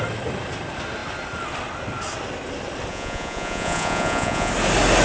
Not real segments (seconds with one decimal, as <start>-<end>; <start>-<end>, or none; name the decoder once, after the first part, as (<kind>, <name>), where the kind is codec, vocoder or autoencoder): 2.9-4.5 (vocoder, Vocos)